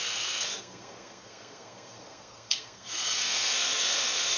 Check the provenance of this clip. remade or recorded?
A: remade